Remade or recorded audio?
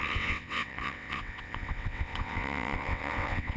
remade